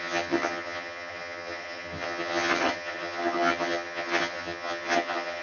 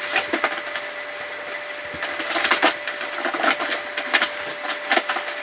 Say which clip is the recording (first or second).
second